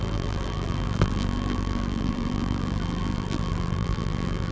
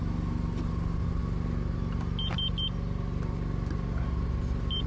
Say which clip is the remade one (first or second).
first